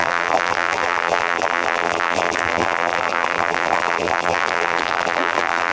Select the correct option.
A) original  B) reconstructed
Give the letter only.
B